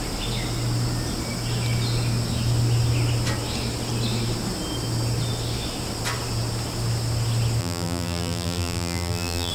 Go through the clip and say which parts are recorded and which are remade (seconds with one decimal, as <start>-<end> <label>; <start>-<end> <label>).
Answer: 0.0-7.6 recorded; 7.6-9.5 remade

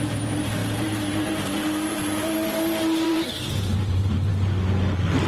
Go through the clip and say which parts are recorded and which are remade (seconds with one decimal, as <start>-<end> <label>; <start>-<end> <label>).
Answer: 0.0-4.3 remade; 4.3-5.3 recorded

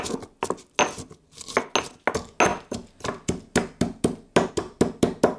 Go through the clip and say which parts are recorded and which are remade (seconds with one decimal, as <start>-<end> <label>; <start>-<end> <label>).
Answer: 0.0-5.4 recorded

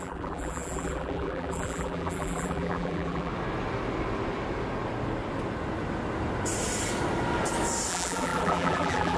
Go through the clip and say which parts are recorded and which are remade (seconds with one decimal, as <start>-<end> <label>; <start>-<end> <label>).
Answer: 0.0-3.3 remade; 3.3-7.9 recorded; 7.9-9.2 remade

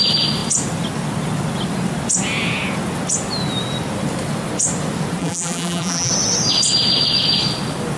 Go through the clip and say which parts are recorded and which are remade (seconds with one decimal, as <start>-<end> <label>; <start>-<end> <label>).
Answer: 0.0-5.2 recorded; 5.2-6.1 remade; 6.1-8.0 recorded

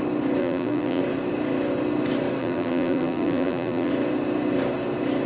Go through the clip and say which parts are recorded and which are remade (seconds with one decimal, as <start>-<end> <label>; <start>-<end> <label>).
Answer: 0.0-0.4 recorded; 0.4-1.0 remade; 1.0-2.4 recorded; 2.4-3.9 remade; 3.9-5.3 recorded